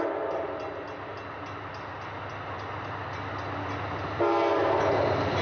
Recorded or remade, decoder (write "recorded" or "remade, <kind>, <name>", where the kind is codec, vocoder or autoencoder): recorded